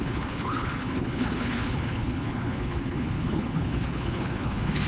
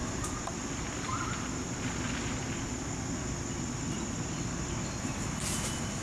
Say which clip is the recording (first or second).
second